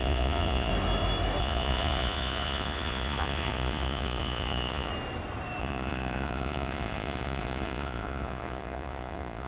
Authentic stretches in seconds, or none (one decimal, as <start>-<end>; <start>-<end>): 0.7-1.4; 4.9-5.6